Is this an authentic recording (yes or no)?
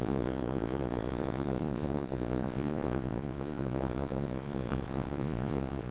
no